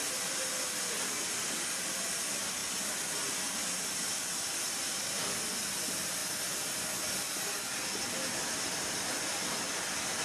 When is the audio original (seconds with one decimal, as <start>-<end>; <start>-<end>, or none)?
0.0-10.2